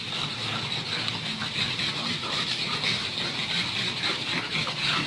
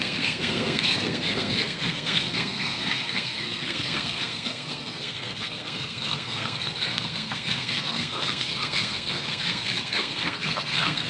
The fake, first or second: second